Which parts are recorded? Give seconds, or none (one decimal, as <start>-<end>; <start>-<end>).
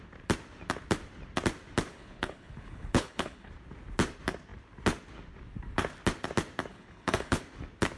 0.0-1.9; 3.5-6.7; 7.4-8.0